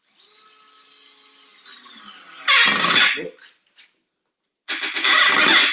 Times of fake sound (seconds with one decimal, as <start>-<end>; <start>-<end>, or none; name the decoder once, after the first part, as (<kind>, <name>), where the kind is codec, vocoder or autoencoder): none